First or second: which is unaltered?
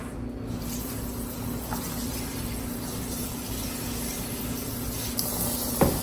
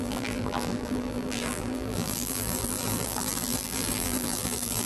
first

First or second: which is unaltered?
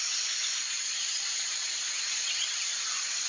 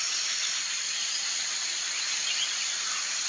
second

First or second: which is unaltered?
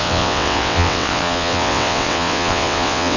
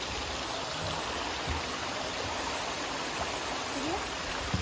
second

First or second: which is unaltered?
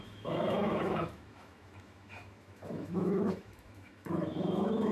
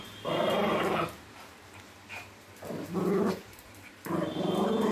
second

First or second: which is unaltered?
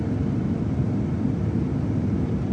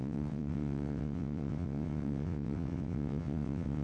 first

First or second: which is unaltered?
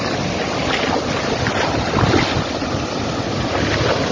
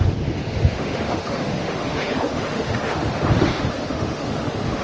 first